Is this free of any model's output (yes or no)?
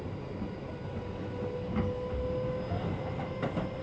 yes